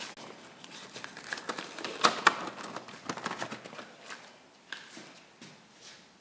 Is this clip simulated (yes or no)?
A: no